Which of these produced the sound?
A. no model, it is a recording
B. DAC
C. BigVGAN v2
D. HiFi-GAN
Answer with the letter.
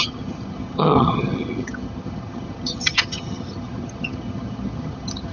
D